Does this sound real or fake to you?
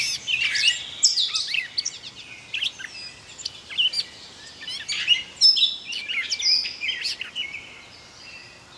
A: real